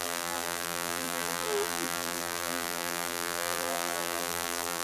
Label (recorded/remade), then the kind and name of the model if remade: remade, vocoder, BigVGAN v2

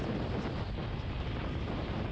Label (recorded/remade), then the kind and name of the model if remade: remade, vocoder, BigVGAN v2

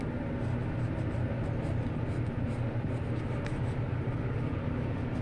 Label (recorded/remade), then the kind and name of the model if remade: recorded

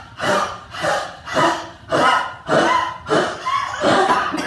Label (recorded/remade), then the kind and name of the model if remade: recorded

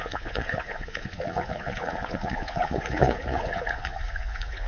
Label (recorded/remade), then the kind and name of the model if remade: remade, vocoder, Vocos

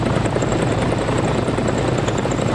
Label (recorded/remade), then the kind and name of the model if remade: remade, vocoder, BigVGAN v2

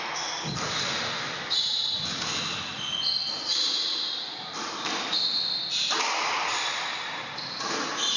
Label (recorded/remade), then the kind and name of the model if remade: recorded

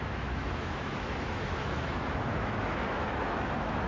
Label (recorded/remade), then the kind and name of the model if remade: remade, autoencoder, DAC-VAE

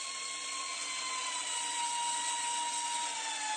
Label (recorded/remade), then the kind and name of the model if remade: remade, vocoder, WaveNeXt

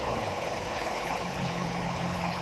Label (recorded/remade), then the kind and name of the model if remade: remade, codec, HILCodec